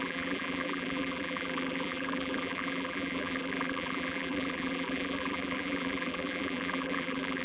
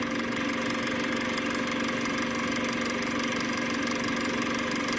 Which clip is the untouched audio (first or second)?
second